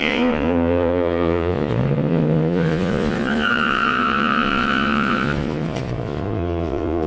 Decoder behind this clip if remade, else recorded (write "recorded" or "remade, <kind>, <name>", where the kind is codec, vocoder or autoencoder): remade, vocoder, Vocos